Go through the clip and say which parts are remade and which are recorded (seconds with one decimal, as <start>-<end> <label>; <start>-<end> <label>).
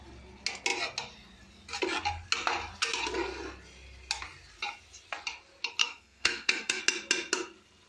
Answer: 0.0-5.8 recorded; 5.8-6.8 remade; 6.8-7.9 recorded